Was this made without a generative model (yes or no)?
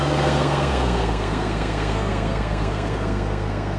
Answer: no